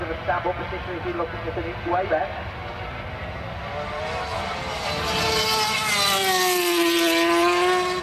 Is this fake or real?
real